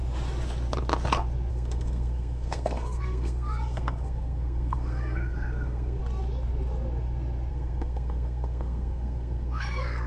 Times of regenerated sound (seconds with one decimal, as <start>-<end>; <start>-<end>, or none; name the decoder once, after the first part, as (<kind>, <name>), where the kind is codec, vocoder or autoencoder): 1.5-6.0 (codec, SNAC); 7.5-10.1